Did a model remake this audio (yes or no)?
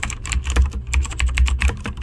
yes